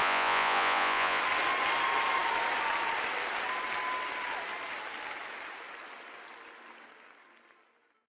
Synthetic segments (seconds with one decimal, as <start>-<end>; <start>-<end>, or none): 0.0-1.2